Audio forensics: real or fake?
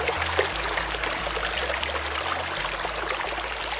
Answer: real